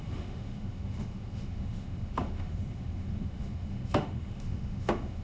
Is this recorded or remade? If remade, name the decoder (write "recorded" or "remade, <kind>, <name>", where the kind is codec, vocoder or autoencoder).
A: remade, autoencoder, DAC-VAE